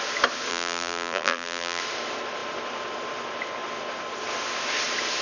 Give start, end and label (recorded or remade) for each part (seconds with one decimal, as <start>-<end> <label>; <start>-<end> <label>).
0.0-0.5 recorded; 0.5-1.8 remade; 1.8-5.2 recorded